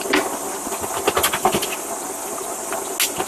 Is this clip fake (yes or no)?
no